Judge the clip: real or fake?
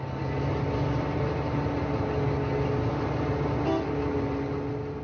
real